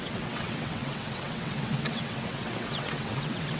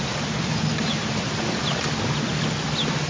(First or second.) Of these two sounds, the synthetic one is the first